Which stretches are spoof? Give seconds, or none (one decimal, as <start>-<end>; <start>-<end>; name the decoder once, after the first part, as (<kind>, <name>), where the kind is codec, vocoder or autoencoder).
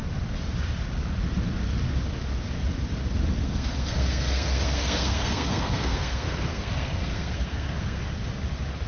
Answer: 3.4-8.0 (codec, SNAC)